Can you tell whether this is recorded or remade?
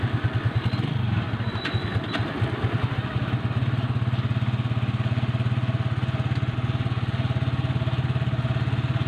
recorded